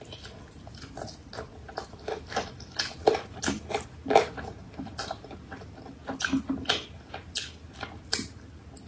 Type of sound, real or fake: real